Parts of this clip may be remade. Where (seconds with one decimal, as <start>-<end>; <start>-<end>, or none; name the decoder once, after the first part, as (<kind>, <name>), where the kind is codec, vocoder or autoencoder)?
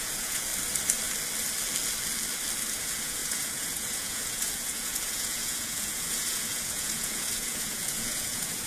0.0-0.5 (vocoder, Vocos); 2.7-8.7